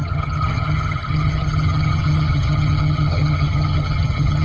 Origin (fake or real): fake